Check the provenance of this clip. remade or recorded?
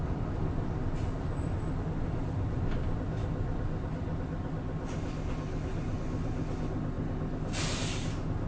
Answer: recorded